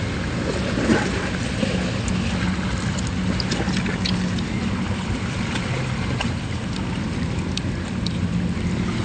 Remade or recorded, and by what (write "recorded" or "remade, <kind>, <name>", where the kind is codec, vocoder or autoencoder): recorded